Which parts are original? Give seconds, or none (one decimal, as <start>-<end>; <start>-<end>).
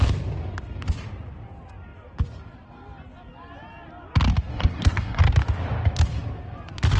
0.0-4.5; 5.2-7.0